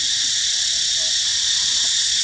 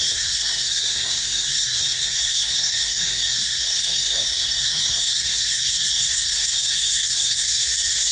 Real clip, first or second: first